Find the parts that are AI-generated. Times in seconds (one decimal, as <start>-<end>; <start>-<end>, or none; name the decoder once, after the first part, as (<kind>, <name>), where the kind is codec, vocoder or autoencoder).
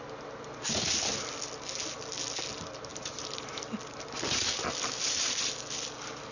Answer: 2.9-3.6 (vocoder, BigVGAN v2)